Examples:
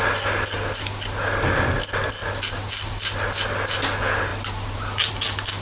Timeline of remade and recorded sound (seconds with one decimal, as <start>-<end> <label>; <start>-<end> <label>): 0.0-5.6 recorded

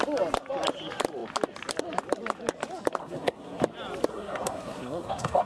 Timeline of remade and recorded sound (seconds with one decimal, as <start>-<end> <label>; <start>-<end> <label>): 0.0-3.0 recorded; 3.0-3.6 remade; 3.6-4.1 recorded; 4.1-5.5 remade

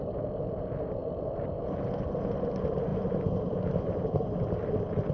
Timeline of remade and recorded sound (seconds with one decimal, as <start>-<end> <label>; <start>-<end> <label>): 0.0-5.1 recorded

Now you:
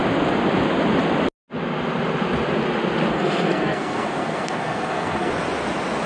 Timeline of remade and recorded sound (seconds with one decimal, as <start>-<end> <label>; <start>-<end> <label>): 0.0-3.1 recorded; 3.1-5.3 remade; 5.3-6.1 recorded